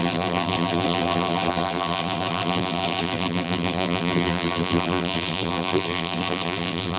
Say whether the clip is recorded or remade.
remade